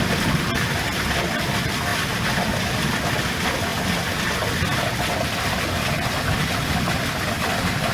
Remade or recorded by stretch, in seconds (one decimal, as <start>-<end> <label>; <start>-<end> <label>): 0.0-7.9 recorded